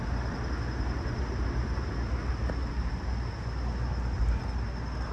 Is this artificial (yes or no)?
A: no